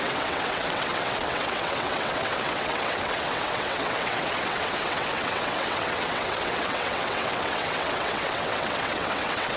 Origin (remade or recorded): remade